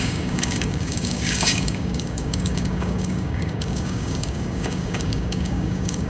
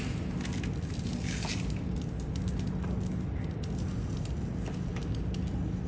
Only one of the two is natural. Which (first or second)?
second